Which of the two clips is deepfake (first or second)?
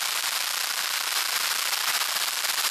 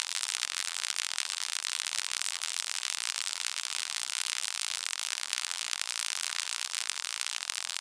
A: second